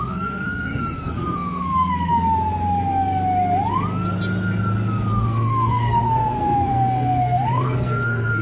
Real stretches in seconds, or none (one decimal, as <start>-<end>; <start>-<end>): 2.1-5.1